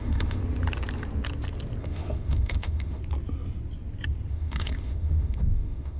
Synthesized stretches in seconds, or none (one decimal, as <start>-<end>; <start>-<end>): 0.0-0.4; 1.8-3.0; 4.3-6.0